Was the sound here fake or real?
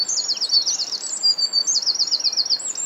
real